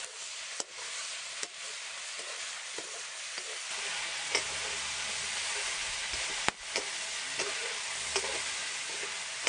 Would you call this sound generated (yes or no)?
yes